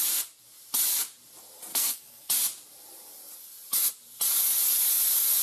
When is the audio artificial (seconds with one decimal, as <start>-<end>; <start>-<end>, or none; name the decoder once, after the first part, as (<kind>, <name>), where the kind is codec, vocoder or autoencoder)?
1.7-2.3 (codec, SNAC)